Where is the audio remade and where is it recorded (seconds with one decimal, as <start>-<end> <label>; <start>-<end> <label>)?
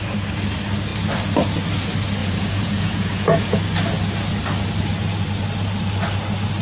0.0-2.2 recorded; 2.2-3.6 remade; 3.6-6.6 recorded